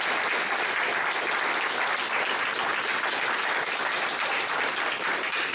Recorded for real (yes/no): yes